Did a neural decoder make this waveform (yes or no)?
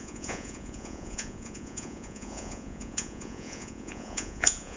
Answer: yes